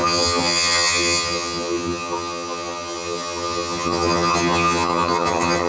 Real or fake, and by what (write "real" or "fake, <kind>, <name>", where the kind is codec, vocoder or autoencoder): fake, vocoder, HiFi-GAN